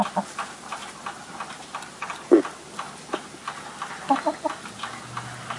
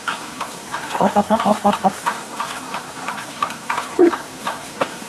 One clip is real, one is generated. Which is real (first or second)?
first